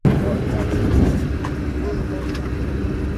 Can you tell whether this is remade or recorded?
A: recorded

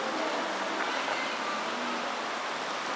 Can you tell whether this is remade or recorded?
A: recorded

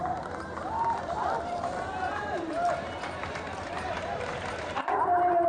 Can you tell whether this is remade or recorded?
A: remade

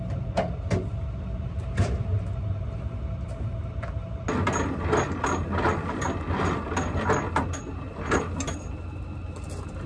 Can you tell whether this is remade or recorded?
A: recorded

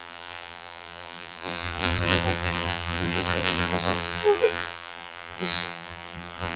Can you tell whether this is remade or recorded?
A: remade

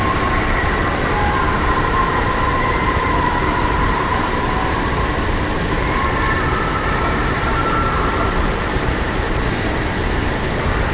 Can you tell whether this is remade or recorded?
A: remade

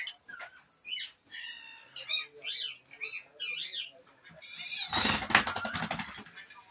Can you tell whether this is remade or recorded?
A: recorded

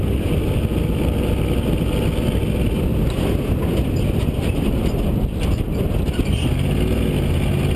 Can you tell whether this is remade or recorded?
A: recorded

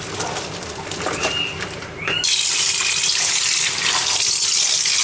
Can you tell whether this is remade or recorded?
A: recorded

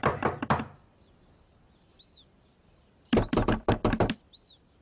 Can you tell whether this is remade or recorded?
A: remade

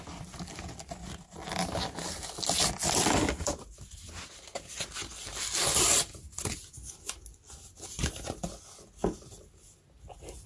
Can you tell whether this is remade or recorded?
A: recorded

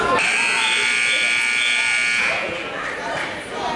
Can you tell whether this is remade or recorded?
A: recorded